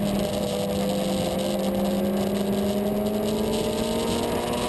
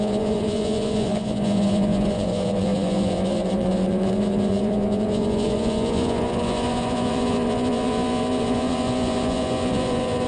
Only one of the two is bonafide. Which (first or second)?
first